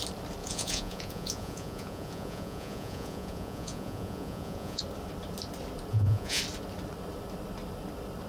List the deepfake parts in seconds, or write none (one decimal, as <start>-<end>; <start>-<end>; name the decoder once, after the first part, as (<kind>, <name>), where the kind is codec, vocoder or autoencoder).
0.4-4.8 (vocoder, Vocos); 5.9-6.4